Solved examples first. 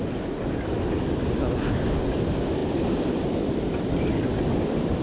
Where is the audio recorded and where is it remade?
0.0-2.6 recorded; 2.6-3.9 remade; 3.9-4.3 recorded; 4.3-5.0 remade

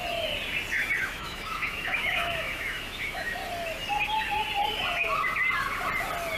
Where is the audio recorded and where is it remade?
0.0-1.0 recorded; 1.0-3.4 remade; 3.4-6.4 recorded

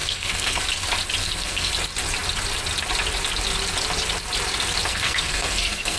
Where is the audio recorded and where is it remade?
0.0-0.6 remade; 0.6-1.2 recorded; 1.2-1.7 remade; 1.7-4.9 recorded; 4.9-6.0 remade

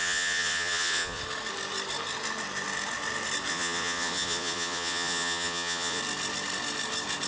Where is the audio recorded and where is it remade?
0.0-1.2 remade; 1.2-3.5 recorded; 3.5-6.0 remade; 6.0-7.3 recorded

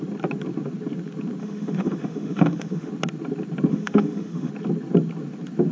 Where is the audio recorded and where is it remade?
0.0-1.4 recorded; 1.4-2.9 remade; 2.9-3.7 recorded; 3.7-4.5 remade; 4.5-5.7 recorded

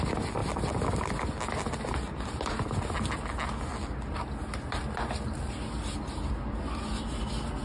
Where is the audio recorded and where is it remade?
0.0-7.6 recorded

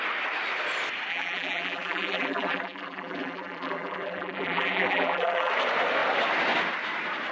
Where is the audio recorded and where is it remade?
0.0-1.1 recorded; 1.1-5.5 remade; 5.5-7.3 recorded

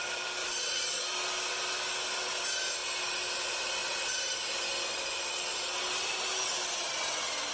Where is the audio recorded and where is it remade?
0.0-0.4 recorded; 0.4-1.0 remade; 1.0-7.5 recorded